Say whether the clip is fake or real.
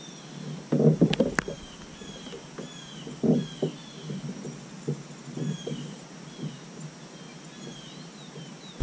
real